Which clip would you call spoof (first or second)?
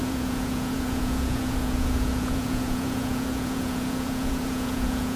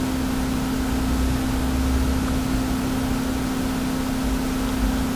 first